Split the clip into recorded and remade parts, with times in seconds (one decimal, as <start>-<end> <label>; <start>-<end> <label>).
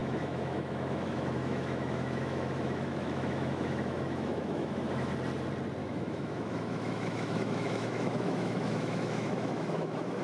0.0-5.1 remade; 5.1-5.8 recorded; 5.8-10.2 remade